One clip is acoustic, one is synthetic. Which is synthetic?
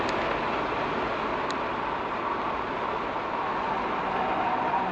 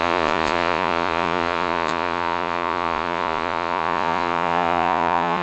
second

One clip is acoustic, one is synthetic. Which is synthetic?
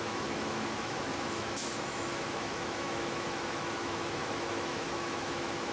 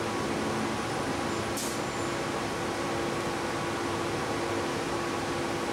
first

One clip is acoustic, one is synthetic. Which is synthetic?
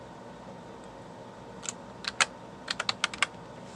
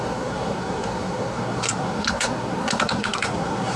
second